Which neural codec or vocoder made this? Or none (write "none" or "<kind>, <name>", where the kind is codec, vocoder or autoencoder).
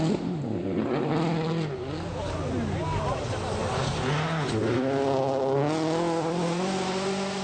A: none